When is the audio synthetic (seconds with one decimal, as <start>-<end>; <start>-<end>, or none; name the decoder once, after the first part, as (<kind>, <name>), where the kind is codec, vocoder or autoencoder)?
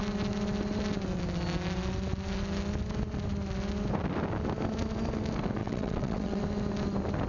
5.6-6.4 (vocoder, WaveNeXt)